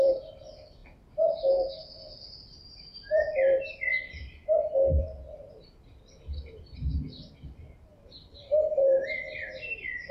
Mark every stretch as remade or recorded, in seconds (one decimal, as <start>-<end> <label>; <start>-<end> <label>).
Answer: 0.0-4.4 remade; 4.4-5.8 recorded; 5.8-10.1 remade

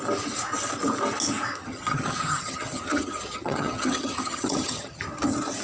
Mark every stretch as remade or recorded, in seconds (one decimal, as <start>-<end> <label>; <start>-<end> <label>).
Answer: 0.0-1.6 recorded; 1.6-5.0 remade; 5.0-5.6 recorded

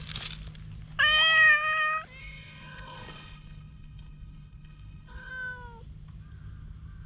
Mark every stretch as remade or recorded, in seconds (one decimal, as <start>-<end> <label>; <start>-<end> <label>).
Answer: 0.0-2.2 recorded; 2.2-5.3 remade; 5.3-7.1 recorded

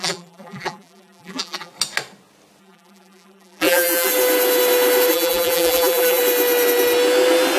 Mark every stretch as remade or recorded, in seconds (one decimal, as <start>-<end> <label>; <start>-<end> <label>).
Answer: 0.0-1.7 remade; 1.7-2.6 recorded; 2.6-4.1 remade; 4.1-5.1 recorded; 5.1-6.2 remade; 6.2-7.6 recorded

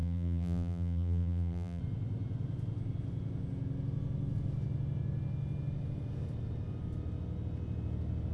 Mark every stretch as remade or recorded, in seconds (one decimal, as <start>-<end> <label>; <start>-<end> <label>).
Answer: 0.0-1.8 remade; 1.8-8.3 recorded

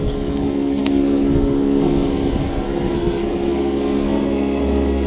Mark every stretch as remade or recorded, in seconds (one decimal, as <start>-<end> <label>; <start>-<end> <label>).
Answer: 0.0-5.1 remade

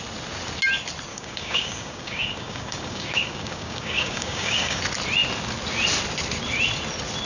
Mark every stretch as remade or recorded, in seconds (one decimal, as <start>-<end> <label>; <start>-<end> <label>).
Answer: 0.0-1.1 recorded; 1.1-4.8 remade; 4.8-7.3 recorded

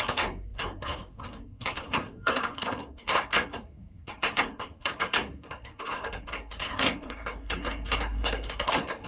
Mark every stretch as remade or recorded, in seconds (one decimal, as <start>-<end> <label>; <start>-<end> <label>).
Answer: 0.0-9.1 remade